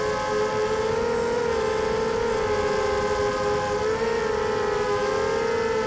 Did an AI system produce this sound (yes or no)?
no